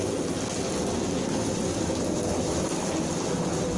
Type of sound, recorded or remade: recorded